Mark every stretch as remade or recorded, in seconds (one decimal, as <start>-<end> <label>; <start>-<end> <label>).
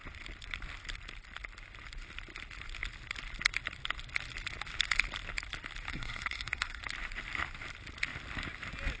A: 0.0-5.9 recorded; 5.9-6.8 remade; 6.8-9.0 recorded